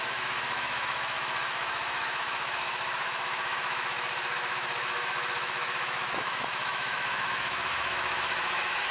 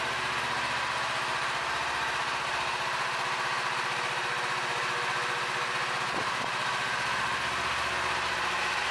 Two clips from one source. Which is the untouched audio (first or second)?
second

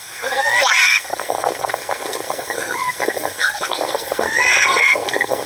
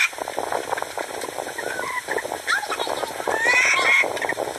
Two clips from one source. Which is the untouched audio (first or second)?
second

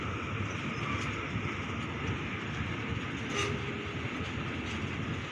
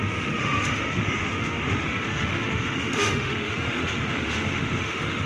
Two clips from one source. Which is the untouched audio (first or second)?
first